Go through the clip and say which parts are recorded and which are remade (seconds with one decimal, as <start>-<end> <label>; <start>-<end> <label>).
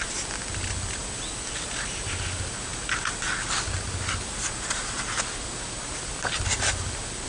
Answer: 0.0-7.3 recorded